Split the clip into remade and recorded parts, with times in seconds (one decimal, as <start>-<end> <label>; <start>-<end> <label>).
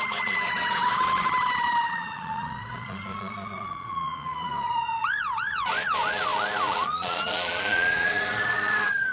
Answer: 0.0-9.1 remade